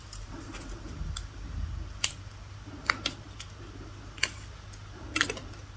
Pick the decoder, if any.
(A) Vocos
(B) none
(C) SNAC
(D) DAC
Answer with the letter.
B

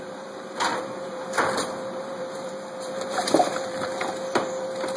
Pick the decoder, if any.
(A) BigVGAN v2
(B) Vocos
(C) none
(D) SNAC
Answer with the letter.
A